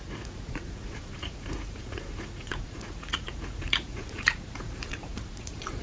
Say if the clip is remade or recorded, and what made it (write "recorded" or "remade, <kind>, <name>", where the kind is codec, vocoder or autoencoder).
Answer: remade, vocoder, Vocos